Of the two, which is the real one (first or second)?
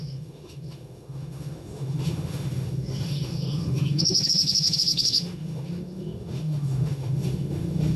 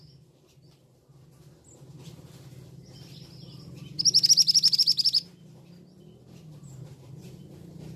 second